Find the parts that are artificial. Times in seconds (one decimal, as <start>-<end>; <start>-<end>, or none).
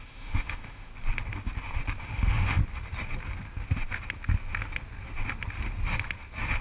0.0-0.9; 2.0-2.6